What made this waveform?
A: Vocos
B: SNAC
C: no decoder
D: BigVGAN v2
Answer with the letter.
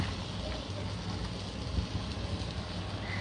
C